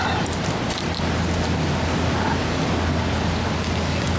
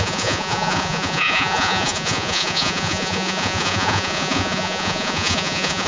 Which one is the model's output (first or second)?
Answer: second